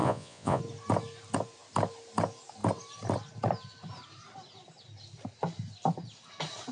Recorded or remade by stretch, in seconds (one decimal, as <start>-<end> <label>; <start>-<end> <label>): 0.0-0.6 remade; 0.6-6.7 recorded